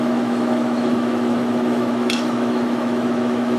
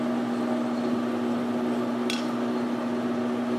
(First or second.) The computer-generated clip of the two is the first